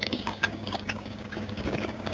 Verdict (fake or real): fake